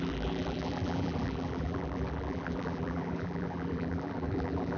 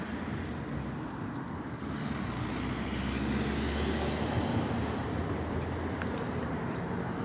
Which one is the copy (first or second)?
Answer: first